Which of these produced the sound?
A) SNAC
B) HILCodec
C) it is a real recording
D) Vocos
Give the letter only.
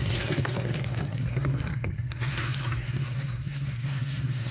A